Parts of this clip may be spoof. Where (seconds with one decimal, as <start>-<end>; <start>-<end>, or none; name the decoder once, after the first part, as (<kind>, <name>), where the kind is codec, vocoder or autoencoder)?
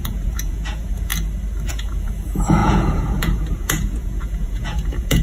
0.0-1.1 (vocoder, Vocos); 1.7-5.2